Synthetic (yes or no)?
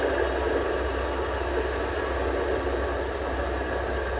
no